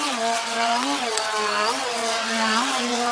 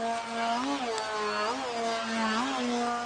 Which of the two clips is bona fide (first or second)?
second